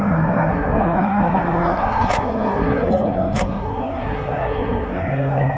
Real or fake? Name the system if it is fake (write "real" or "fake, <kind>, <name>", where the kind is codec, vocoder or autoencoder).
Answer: fake, codec, SNAC